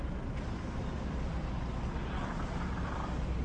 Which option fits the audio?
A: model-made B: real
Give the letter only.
B